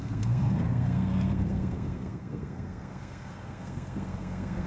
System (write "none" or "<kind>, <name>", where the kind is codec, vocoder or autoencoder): codec, SNAC